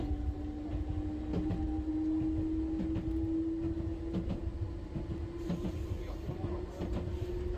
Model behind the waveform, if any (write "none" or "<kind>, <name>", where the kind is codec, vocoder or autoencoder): none